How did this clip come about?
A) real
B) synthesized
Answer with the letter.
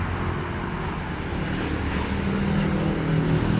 A